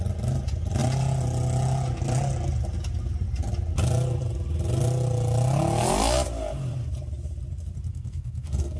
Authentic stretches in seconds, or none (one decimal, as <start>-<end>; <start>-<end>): 0.0-7.9